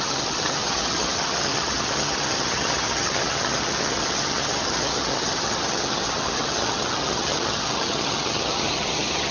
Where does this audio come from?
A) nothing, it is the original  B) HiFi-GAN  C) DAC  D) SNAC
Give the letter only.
B